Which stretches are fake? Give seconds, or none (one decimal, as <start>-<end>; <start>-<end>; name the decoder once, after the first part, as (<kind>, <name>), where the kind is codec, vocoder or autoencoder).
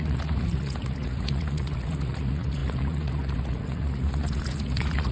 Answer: 0.0-5.1 (vocoder, Vocos)